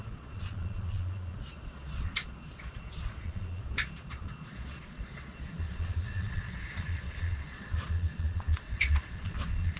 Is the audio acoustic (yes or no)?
no